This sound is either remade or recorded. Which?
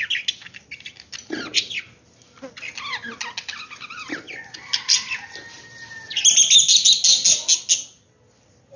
recorded